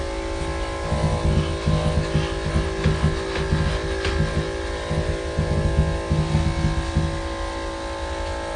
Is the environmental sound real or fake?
real